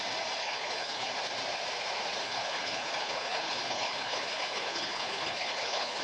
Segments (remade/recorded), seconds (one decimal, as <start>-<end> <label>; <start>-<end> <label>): 0.0-0.4 recorded; 0.4-1.1 remade; 1.1-2.2 recorded; 2.2-6.0 remade